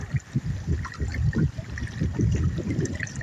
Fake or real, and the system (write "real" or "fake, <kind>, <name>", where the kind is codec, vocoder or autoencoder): real